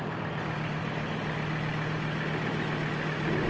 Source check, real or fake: real